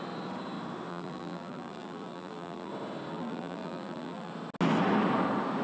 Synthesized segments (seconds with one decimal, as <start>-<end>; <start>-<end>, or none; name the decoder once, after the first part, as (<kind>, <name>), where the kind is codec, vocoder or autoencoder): 0.9-2.7 (vocoder, BigVGAN v2); 3.1-4.3